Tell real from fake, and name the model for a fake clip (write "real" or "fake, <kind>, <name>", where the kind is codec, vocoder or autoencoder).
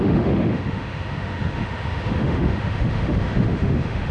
fake, autoencoder, DAC-VAE